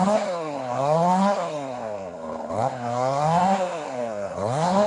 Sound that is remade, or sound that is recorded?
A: remade